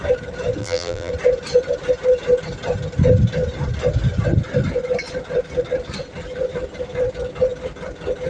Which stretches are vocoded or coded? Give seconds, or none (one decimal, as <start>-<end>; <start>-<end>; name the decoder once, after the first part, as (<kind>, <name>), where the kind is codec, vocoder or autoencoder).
0.6-1.1 (vocoder, BigVGAN v2)